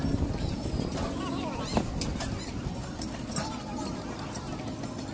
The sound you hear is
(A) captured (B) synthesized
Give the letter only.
A